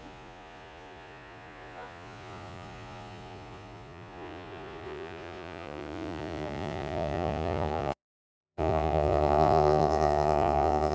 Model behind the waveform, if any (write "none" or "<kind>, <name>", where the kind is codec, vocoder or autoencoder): vocoder, Vocos